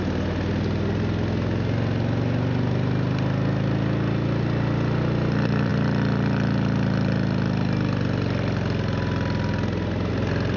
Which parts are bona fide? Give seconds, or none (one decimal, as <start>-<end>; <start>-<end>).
0.0-10.6